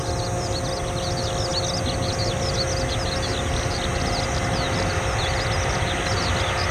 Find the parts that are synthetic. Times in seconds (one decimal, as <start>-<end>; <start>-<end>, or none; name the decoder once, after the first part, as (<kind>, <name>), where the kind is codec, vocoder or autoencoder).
none

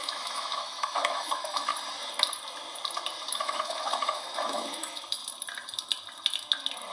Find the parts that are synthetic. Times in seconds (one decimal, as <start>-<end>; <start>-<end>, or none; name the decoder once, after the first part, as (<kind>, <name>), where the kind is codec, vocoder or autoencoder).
0.0-1.7 (autoencoder, DAC-VAE); 3.3-5.2

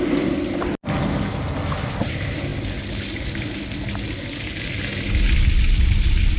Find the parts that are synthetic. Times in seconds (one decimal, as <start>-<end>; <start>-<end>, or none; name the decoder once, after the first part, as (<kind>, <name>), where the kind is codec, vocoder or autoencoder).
none

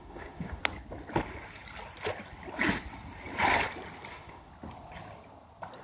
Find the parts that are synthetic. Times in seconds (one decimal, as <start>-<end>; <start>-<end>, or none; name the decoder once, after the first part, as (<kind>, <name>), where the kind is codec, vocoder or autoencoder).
0.0-0.6 (autoencoder, DAC-VAE); 4.1-4.5

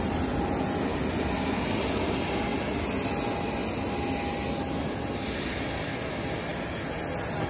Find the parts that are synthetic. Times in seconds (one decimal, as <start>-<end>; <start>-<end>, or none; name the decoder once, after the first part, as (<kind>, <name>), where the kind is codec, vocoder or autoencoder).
none